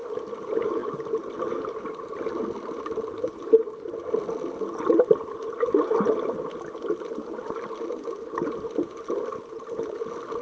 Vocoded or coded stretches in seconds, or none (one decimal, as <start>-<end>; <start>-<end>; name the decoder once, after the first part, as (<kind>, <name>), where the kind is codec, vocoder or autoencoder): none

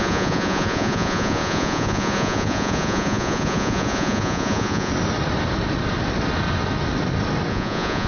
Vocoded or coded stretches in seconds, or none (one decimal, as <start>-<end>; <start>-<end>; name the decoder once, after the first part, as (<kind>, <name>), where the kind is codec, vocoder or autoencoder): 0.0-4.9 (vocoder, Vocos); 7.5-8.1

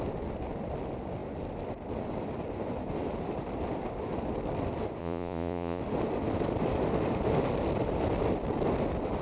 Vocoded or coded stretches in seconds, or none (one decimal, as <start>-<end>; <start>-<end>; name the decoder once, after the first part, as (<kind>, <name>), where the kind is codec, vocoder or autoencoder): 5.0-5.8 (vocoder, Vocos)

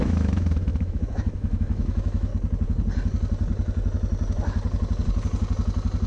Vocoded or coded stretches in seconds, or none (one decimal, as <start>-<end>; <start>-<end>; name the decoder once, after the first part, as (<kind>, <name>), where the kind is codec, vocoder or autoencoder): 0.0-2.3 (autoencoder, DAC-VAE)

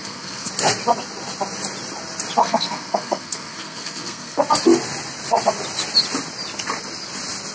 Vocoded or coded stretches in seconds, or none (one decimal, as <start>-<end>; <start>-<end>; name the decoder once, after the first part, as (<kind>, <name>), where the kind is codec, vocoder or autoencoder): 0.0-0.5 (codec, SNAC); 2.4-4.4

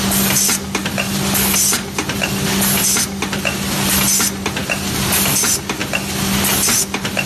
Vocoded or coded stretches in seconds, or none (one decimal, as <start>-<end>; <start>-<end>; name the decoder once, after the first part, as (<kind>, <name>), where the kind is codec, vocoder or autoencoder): none

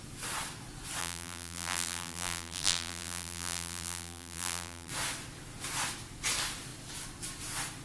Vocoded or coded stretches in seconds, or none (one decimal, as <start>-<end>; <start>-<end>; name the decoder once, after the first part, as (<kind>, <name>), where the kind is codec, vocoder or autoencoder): 1.0-4.9 (vocoder, BigVGAN v2)